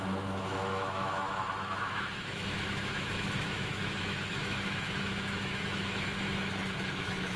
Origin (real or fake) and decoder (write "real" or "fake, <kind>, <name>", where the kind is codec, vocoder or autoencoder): fake, autoencoder, DAC-VAE